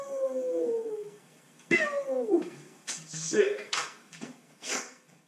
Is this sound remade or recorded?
remade